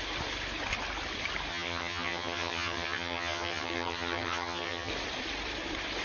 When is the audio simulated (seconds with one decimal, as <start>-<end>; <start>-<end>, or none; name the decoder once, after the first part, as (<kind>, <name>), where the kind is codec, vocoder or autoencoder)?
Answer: 1.5-4.9 (vocoder, HiFi-GAN)